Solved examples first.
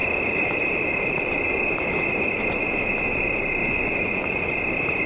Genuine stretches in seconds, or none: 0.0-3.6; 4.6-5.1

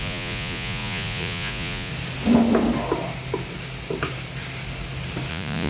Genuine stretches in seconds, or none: 1.9-5.3

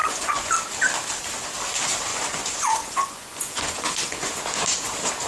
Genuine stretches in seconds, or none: 0.5-2.1; 4.4-5.3

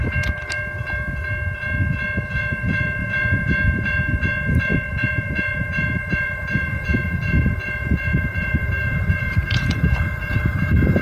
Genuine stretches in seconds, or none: 0.0-2.2